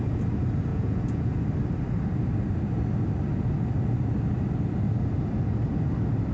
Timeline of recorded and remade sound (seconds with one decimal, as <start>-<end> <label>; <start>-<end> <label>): 0.0-0.7 recorded; 0.7-1.4 remade; 1.4-6.3 recorded